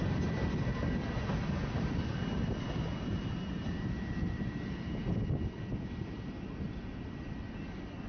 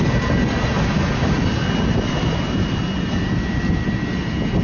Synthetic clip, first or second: first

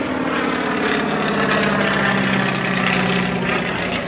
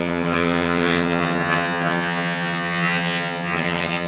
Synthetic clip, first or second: second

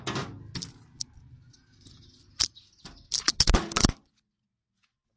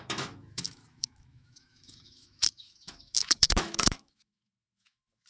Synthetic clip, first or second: second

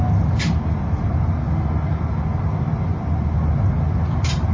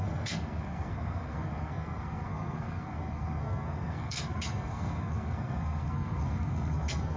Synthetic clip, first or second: second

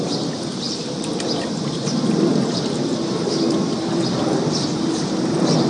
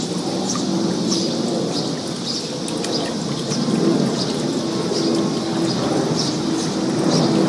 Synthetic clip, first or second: first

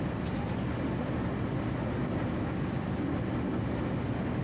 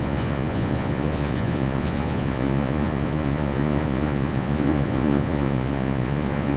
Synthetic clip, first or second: second